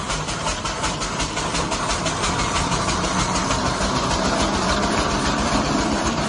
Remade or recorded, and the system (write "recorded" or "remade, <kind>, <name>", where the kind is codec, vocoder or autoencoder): remade, vocoder, BigVGAN v2